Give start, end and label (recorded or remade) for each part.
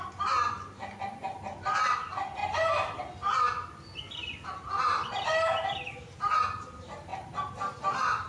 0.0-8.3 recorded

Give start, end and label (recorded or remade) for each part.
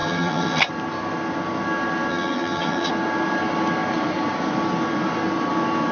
0.0-0.7 remade; 0.7-2.1 recorded; 2.1-2.9 remade; 2.9-5.9 recorded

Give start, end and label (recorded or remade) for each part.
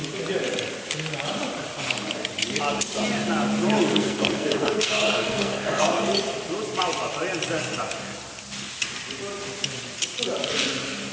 0.0-3.9 recorded; 3.9-6.0 remade; 6.0-11.1 recorded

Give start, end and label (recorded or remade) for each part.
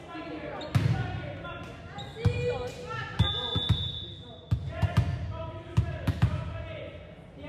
0.0-7.5 recorded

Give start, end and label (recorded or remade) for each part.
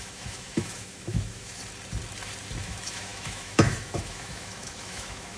0.0-1.6 remade; 1.6-2.6 recorded; 2.6-5.4 remade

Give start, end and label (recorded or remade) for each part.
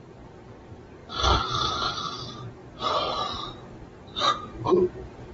0.0-5.3 recorded